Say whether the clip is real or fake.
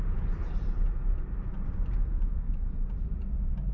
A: real